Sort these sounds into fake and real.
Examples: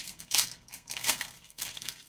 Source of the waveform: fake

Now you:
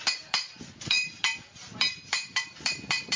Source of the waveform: fake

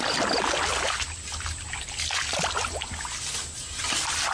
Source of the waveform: real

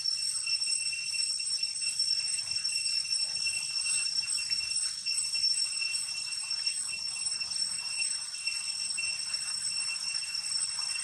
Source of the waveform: real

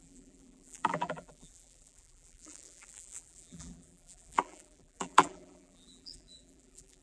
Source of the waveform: fake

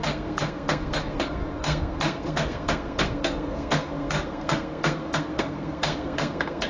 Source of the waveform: fake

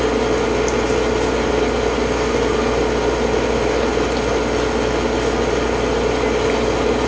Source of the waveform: real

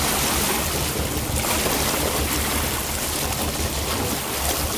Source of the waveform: real